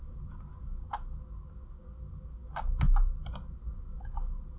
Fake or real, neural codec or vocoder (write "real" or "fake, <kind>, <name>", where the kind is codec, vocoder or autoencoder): real